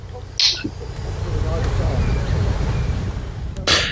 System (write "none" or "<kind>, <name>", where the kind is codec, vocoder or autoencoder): none